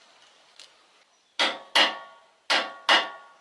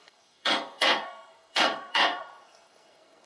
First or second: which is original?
first